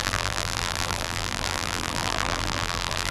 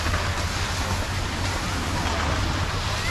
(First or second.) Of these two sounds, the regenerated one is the first